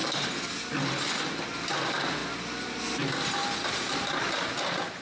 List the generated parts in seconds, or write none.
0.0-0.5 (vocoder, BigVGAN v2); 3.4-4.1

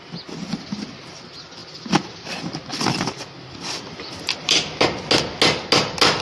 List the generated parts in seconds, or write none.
1.6-2.3 (vocoder, BigVGAN v2); 2.7-4.8

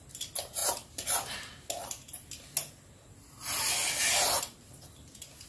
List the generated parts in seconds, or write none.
none